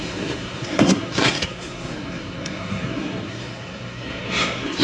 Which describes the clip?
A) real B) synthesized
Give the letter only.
B